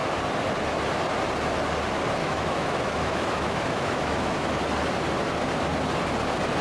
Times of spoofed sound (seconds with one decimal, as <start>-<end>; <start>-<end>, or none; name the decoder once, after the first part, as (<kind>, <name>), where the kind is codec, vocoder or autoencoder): 2.2-4.6 (autoencoder, DAC-VAE)

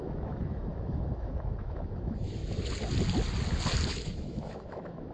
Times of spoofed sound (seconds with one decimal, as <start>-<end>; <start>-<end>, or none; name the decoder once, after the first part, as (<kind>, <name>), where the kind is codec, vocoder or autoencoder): 0.0-2.4 (autoencoder, DAC-VAE); 3.9-5.1

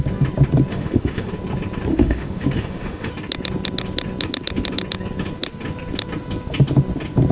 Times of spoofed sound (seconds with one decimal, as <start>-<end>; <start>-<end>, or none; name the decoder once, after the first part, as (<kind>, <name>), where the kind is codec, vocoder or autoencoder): 0.7-1.3 (autoencoder, DAC-VAE); 1.9-3.1

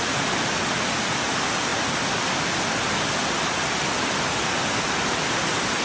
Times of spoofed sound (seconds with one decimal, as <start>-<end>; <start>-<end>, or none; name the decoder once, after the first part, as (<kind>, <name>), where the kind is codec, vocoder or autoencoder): none

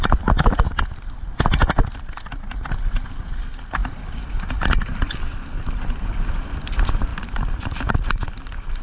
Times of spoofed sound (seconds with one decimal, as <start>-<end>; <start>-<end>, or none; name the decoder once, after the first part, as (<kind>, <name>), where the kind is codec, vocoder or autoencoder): none

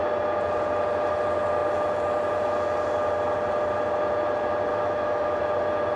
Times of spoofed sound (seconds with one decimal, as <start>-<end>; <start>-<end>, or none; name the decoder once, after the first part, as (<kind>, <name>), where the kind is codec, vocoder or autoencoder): 4.7-5.4 (autoencoder, DAC-VAE)